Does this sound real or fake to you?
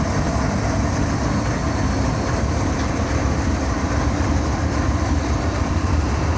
fake